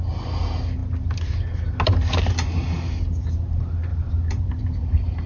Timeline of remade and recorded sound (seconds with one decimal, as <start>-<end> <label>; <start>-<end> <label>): 0.0-3.9 recorded; 3.9-4.6 remade; 4.6-5.3 recorded